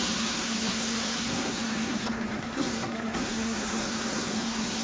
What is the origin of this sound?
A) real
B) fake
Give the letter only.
B